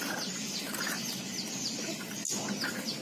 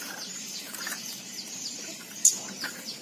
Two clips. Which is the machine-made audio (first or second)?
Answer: second